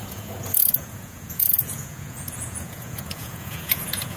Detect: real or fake fake